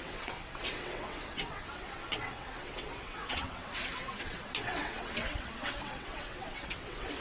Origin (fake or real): fake